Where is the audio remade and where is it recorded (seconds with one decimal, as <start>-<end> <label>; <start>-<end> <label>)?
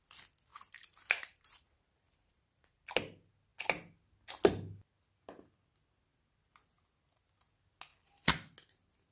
0.0-0.5 recorded; 0.5-2.9 remade; 2.9-9.1 recorded